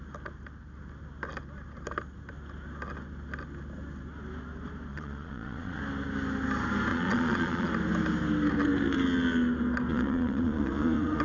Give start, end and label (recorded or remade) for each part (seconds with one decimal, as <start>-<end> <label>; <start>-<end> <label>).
0.0-4.9 recorded; 4.9-5.8 remade; 5.8-6.9 recorded; 6.9-7.7 remade; 7.7-9.9 recorded; 9.9-11.2 remade